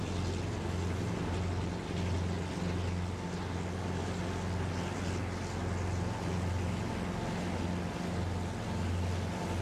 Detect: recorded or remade recorded